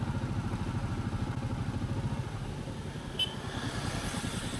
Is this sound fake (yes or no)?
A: no